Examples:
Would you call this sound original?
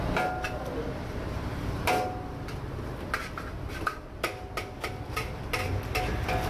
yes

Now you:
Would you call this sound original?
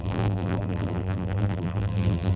no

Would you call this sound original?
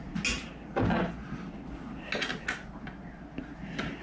yes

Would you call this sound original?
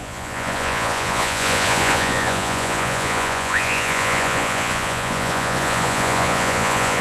no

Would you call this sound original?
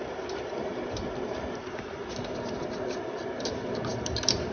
no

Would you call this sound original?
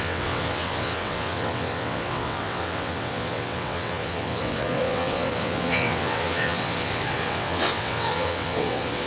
no